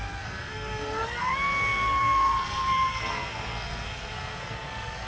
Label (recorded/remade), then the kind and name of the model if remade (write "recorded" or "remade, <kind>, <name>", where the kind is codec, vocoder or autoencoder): remade, codec, SNAC